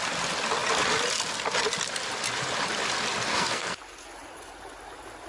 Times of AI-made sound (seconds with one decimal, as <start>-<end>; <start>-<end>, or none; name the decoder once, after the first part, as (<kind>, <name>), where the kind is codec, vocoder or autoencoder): 3.3-3.8 (codec, SNAC)